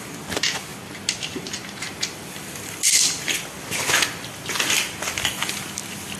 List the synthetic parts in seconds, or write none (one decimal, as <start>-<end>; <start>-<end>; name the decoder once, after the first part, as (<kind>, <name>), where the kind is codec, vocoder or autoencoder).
none